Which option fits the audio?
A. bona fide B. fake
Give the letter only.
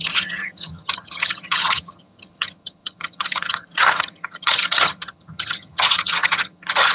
B